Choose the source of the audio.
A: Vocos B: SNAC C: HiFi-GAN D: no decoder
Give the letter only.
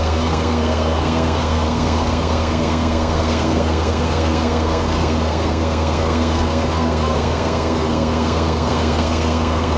B